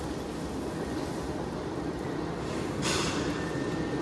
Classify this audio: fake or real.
real